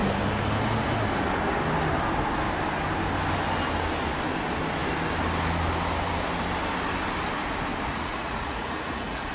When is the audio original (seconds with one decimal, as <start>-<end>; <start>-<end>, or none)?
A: 0.0-7.9